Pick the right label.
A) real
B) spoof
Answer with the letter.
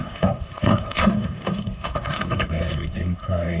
B